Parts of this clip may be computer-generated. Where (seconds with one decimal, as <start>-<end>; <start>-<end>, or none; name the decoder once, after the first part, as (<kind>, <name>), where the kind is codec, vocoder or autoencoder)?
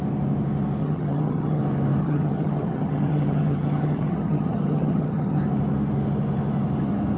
0.8-1.6 (vocoder, HiFi-GAN); 2.0-5.4